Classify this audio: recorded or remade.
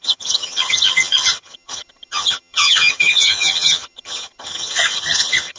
remade